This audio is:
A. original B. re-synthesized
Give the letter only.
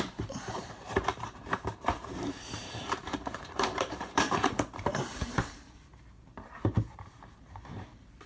B